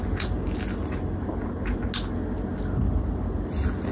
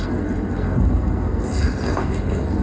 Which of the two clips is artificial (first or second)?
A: second